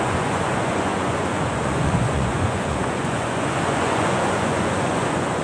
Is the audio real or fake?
fake